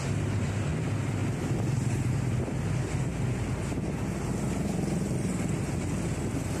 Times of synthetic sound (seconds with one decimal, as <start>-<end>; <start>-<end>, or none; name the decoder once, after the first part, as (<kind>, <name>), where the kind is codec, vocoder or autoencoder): 1.2-2.1 (vocoder, BigVGAN v2); 3.1-5.7